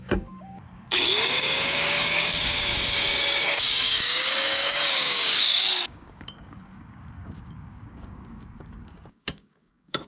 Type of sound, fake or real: fake